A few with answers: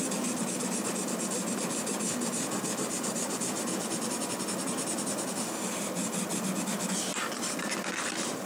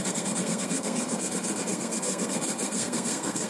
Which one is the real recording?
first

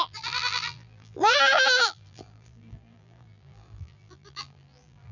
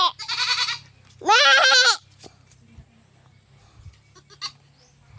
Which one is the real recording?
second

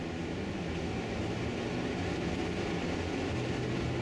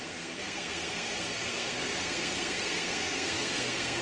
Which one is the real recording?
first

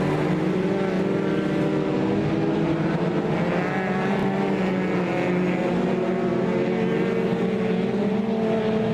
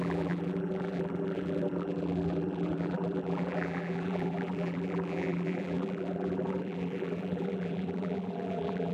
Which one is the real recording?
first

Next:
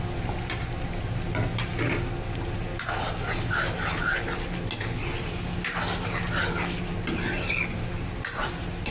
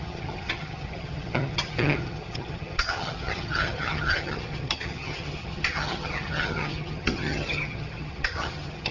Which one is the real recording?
first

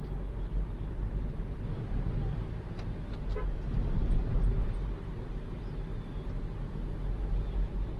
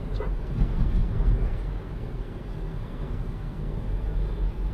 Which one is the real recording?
first